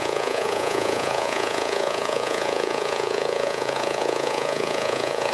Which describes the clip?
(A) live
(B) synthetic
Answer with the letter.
B